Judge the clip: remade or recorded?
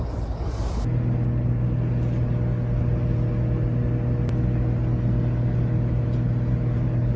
recorded